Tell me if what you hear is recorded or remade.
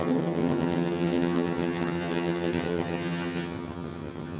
remade